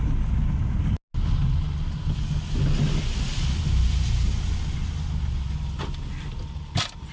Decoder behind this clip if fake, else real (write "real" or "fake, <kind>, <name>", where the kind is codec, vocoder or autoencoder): real